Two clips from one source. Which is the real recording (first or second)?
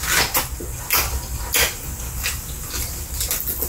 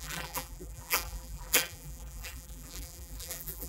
first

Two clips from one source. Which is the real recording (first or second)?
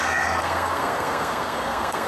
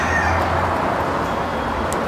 second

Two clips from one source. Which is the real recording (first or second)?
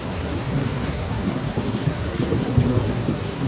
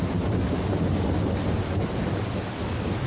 second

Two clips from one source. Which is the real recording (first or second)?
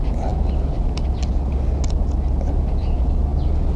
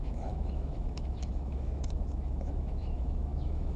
first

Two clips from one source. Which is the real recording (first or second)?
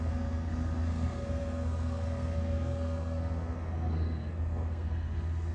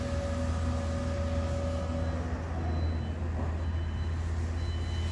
second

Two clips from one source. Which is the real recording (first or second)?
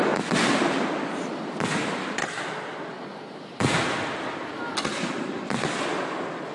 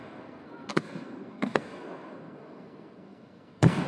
first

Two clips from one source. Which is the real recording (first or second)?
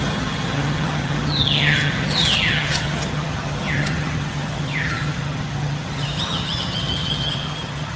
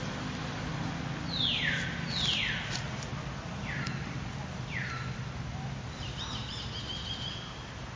second